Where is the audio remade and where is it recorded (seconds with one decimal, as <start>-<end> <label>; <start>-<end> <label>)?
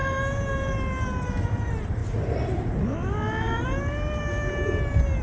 0.0-0.5 recorded; 0.5-2.0 remade; 2.0-5.2 recorded